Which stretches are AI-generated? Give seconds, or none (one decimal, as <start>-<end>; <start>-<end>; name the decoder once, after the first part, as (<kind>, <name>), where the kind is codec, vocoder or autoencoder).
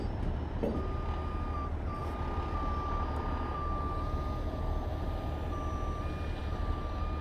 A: none